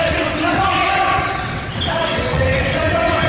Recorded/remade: remade